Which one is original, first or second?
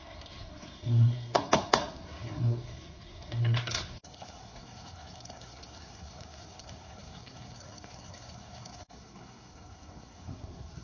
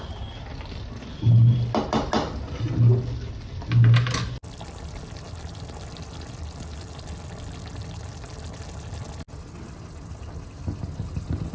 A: second